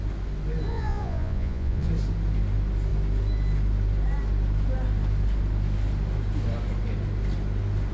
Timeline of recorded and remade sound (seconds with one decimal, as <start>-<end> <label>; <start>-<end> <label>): 0.0-0.7 recorded; 0.7-1.9 remade; 1.9-7.9 recorded